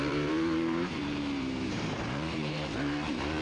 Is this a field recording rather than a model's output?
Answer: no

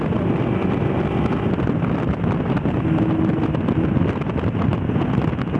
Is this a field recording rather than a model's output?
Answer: yes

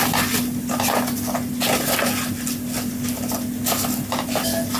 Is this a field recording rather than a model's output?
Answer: yes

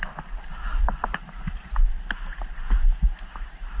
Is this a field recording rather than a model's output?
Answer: yes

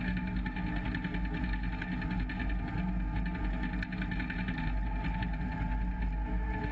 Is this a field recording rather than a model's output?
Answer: yes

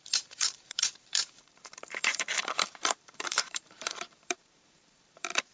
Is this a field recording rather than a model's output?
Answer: no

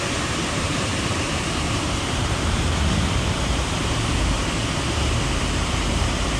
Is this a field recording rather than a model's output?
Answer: no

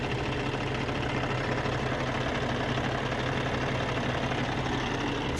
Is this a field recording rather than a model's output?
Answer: yes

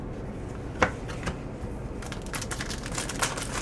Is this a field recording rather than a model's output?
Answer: yes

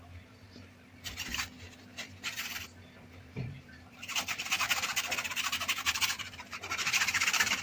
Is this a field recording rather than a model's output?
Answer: no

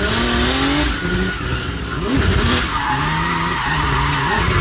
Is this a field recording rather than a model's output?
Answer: yes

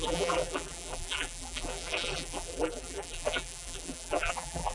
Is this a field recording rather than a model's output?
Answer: no